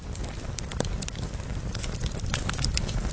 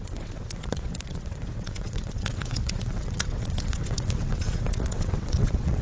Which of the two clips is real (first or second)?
first